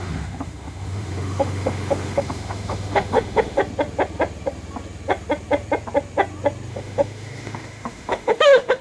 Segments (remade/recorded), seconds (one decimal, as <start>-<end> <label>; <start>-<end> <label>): 0.0-3.6 remade; 3.6-6.7 recorded; 6.7-8.8 remade